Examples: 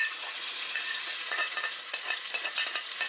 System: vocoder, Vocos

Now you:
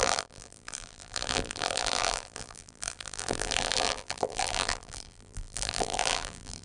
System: vocoder, BigVGAN v2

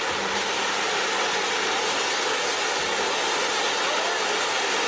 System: none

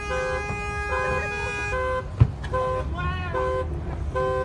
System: none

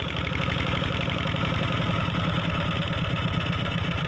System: vocoder, BigVGAN v2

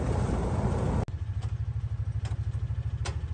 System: none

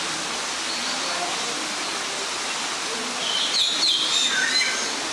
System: none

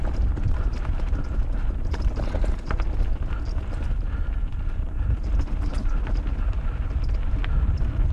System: none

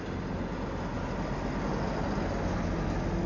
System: none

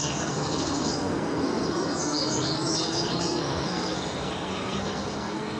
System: codec, SNAC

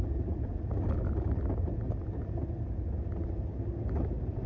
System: none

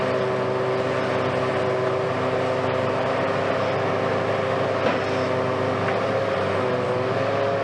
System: none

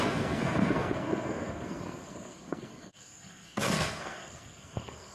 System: codec, SNAC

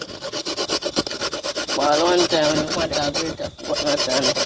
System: none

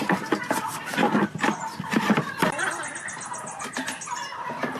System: none